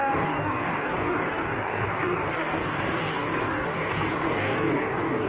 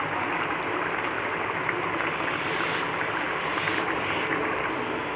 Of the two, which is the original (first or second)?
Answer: second